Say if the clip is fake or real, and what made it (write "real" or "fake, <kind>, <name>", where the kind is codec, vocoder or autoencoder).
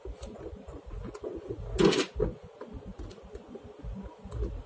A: real